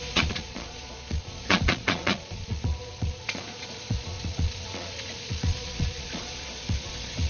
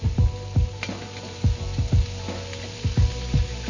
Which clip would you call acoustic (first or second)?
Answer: second